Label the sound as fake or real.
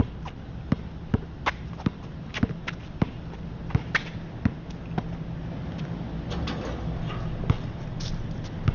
real